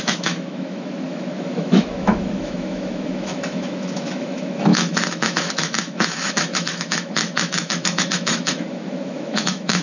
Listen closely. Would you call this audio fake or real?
fake